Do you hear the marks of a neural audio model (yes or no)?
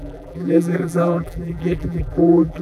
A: yes